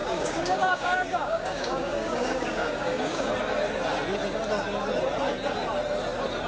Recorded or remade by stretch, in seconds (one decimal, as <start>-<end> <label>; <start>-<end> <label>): 0.0-3.3 remade; 3.3-6.5 recorded